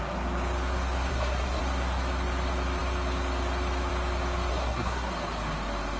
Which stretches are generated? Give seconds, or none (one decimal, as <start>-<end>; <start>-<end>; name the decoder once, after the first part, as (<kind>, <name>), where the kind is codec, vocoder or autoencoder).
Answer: 1.1-1.6 (codec, SNAC); 4.5-5.1